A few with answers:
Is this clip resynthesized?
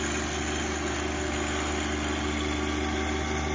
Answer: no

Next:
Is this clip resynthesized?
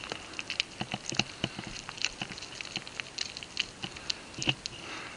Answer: no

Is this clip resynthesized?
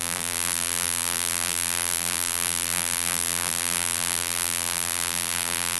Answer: yes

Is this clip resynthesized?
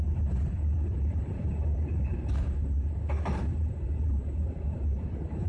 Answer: yes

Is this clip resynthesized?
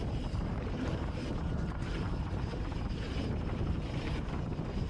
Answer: yes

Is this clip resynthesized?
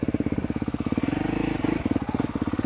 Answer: no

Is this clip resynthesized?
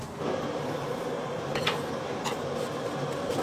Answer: no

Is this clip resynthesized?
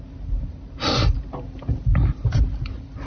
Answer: yes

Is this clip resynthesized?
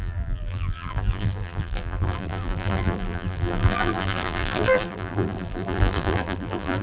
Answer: yes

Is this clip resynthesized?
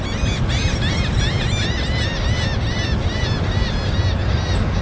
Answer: no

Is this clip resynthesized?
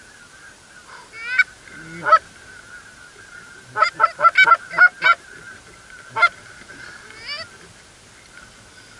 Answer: no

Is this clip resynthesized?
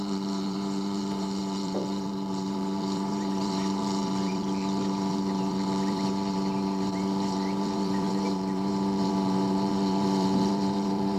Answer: yes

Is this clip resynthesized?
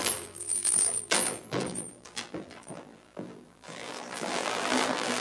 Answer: yes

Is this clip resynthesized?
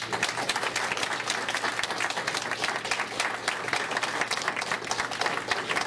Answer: no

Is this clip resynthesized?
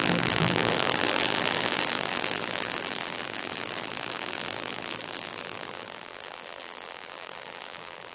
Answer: yes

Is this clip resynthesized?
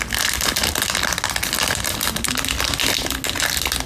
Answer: no